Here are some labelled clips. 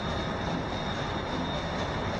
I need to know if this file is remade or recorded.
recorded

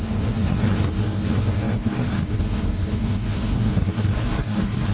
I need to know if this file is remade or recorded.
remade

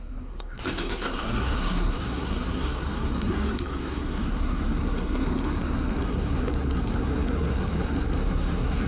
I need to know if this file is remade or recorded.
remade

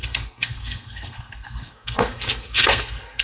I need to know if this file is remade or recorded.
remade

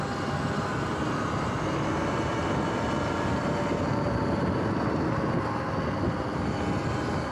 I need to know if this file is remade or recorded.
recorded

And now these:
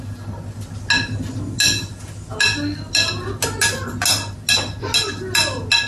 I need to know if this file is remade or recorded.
recorded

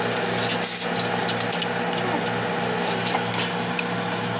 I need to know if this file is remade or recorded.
recorded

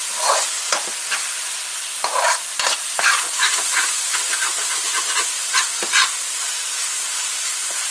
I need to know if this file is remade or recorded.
recorded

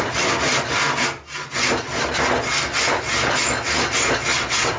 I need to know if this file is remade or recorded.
recorded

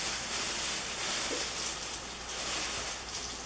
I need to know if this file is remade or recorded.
recorded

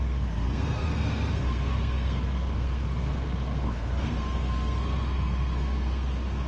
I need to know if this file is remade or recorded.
remade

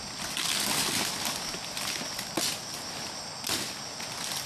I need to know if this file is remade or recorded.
recorded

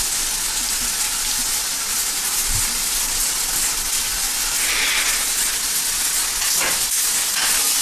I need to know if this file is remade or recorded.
recorded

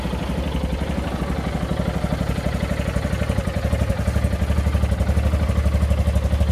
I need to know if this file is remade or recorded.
recorded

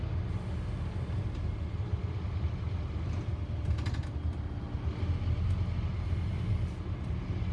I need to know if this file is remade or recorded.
recorded